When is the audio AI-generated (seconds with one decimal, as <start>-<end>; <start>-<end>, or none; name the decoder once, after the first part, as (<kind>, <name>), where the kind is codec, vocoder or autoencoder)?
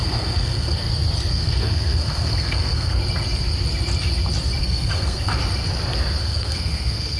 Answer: 0.0-0.8 (codec, SNAC); 1.3-3.0; 4.6-5.3; 6.2-7.2